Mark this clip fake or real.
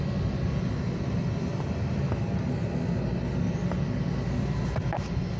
real